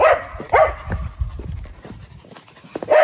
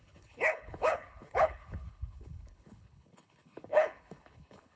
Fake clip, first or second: second